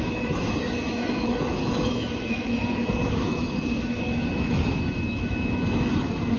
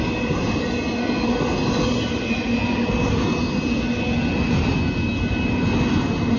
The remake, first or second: first